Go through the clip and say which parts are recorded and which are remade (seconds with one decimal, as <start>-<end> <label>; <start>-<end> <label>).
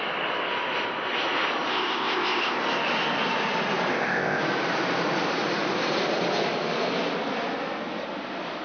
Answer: 0.0-1.7 recorded; 1.7-2.6 remade; 2.6-3.9 recorded; 3.9-4.4 remade; 4.4-8.6 recorded